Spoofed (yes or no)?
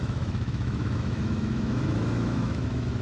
yes